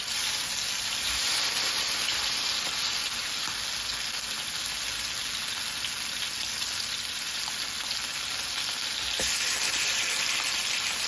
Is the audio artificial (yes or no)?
no